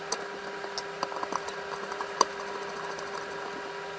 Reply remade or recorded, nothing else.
recorded